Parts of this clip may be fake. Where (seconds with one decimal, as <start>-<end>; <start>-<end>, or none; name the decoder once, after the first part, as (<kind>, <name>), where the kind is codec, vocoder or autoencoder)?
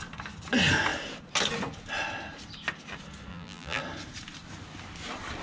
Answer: 3.3-3.8 (vocoder, BigVGAN v2)